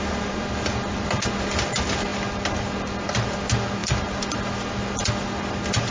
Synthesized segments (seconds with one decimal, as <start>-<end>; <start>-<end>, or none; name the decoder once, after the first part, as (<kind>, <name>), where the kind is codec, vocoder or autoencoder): none

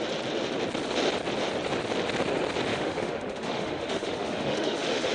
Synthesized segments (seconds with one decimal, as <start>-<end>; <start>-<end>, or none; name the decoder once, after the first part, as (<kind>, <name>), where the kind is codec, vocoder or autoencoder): 2.7-5.1 (autoencoder, DAC-VAE)

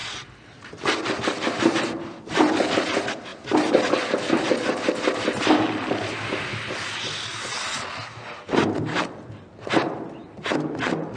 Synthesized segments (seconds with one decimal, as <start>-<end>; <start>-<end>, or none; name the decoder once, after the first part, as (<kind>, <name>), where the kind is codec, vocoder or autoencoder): none

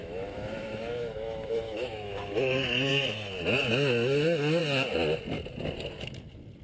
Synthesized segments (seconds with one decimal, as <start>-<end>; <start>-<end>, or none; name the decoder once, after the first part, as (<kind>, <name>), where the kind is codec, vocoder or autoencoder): 0.0-2.9 (autoencoder, DAC-VAE)

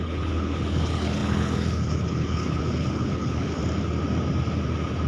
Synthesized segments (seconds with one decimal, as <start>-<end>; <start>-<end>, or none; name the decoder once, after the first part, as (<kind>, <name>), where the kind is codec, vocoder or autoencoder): 0.0-3.6 (codec, HILCodec)